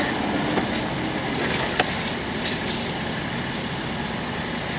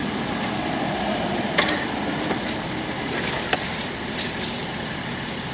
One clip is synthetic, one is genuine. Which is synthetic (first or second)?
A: second